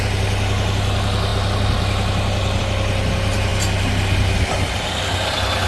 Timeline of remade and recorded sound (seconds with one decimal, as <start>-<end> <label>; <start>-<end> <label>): 0.0-5.7 recorded